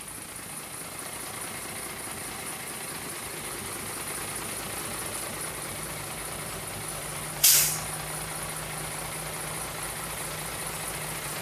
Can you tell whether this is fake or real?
real